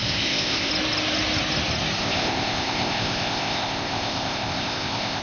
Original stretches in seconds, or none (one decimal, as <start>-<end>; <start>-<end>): 0.7-2.0

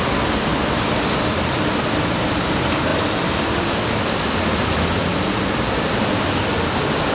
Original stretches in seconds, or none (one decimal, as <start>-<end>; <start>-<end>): 0.0-0.5; 2.0-5.1; 6.5-7.1